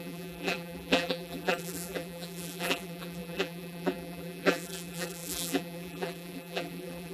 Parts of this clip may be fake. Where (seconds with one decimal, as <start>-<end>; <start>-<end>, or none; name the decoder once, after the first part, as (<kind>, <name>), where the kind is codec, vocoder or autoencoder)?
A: 0.0-7.1 (vocoder, BigVGAN v2)